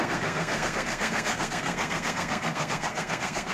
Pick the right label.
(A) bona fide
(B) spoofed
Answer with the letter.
B